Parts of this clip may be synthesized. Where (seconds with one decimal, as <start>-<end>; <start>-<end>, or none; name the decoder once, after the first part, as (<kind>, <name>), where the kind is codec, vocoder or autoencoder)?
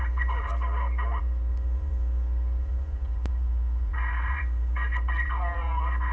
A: 0.0-0.5 (vocoder, Vocos); 1.2-6.1